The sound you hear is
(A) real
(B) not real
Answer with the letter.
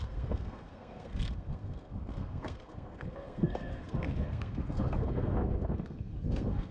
B